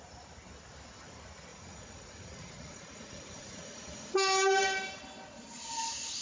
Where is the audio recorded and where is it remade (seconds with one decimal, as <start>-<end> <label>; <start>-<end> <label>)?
0.0-1.5 recorded; 1.5-4.1 remade; 4.1-6.2 recorded